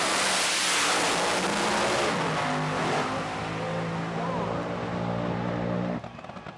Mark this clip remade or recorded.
recorded